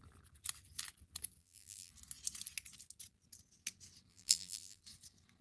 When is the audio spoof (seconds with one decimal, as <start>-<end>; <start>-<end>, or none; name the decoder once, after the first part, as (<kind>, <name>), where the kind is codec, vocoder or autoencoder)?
1.4-1.9 (vocoder, BigVGAN v2); 4.1-4.8